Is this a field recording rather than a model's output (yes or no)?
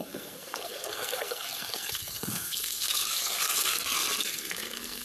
no